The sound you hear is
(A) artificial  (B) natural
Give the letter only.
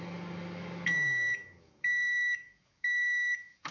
A